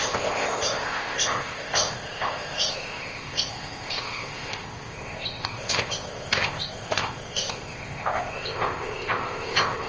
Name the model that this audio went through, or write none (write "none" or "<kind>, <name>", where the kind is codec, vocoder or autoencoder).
codec, ZipCodec